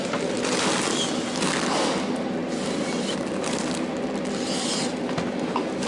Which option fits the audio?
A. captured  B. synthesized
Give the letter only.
A